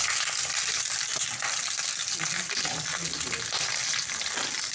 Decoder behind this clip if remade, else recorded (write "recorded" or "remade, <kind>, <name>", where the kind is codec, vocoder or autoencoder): recorded